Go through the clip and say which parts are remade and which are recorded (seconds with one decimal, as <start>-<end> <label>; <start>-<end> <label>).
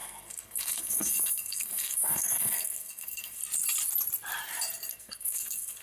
0.0-3.4 remade; 3.4-4.9 recorded; 4.9-5.8 remade